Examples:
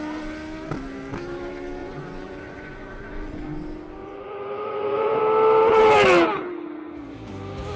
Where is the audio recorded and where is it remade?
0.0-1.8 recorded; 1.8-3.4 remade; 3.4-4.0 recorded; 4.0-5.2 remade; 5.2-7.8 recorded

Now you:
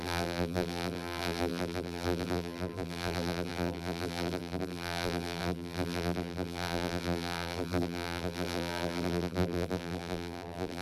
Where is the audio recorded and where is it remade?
0.0-10.8 remade

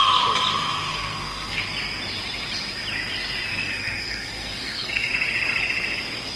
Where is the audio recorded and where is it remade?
0.0-0.9 recorded; 0.9-1.6 remade; 1.6-3.5 recorded; 3.5-5.1 remade; 5.1-6.4 recorded

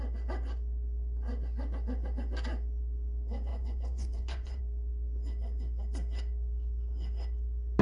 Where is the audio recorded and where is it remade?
0.0-3.5 recorded; 3.5-4.6 remade; 4.6-7.8 recorded